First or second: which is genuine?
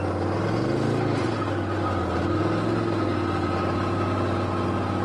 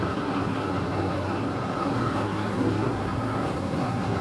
first